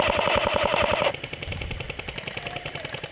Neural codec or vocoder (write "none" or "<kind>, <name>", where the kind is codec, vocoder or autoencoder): none